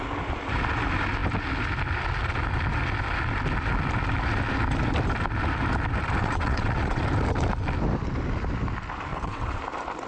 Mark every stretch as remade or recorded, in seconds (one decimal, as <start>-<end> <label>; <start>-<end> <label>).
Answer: 0.0-6.2 recorded; 6.2-7.0 remade; 7.0-9.1 recorded; 9.1-9.6 remade; 9.6-10.1 recorded